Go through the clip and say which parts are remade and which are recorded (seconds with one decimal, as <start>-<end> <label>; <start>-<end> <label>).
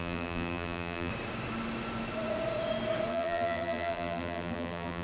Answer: 0.0-1.1 remade; 1.1-3.1 recorded; 3.1-5.0 remade